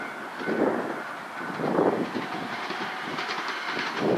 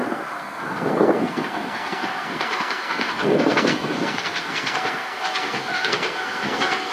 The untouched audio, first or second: first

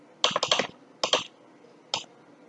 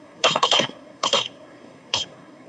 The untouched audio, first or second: first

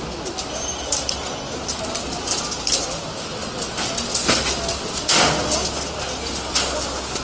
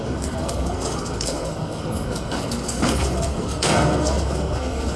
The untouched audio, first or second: first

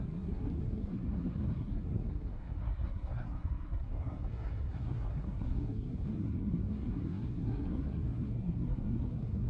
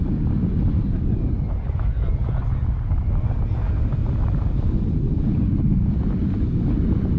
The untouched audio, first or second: second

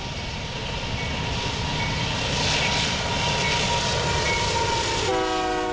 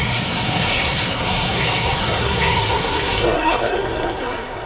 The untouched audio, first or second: first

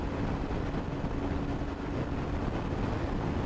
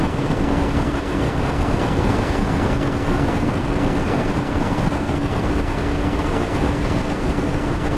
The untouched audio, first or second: first